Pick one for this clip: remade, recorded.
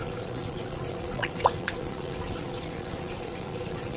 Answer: remade